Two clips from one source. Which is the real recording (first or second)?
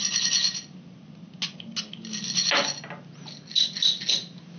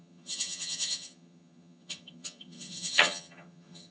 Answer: first